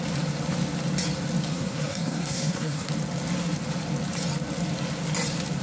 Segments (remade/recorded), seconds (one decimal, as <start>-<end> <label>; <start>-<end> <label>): 0.0-1.5 recorded; 1.5-2.9 remade; 2.9-5.6 recorded